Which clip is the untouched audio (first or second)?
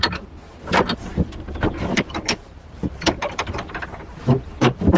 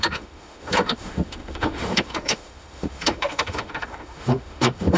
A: first